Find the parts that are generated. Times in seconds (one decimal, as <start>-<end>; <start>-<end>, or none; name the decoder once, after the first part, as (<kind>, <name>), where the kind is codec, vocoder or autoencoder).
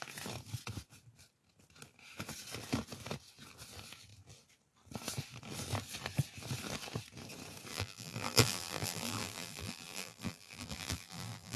7.7-11.6 (vocoder, BigVGAN v2)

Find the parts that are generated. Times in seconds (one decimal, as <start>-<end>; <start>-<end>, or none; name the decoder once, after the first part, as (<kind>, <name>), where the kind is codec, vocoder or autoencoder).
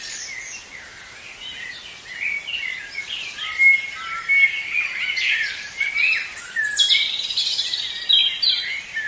none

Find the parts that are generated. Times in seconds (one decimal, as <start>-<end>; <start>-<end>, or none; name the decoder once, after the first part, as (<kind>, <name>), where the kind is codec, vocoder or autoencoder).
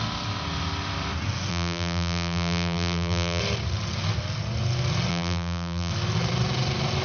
1.5-3.4 (vocoder, BigVGAN v2); 5.1-5.9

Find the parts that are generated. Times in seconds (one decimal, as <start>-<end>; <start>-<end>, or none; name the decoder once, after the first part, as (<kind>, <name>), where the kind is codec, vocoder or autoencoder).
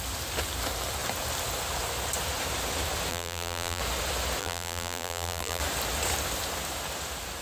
3.1-3.8 (vocoder, BigVGAN v2); 4.4-5.6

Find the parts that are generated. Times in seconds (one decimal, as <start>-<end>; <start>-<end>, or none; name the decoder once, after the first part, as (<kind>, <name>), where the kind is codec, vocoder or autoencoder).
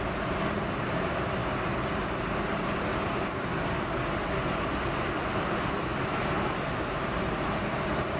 0.0-1.4 (vocoder, BigVGAN v2); 6.3-8.2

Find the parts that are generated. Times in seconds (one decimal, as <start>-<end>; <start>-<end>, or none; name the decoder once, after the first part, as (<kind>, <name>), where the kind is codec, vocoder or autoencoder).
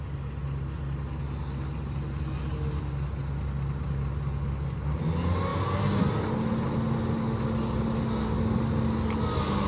none